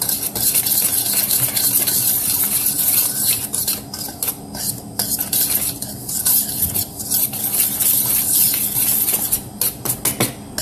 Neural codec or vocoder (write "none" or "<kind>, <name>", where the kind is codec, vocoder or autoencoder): none